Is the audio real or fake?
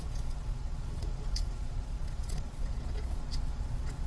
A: fake